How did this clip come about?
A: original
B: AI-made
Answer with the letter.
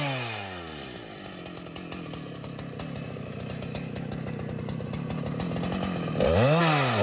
A